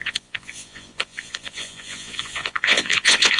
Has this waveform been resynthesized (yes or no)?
yes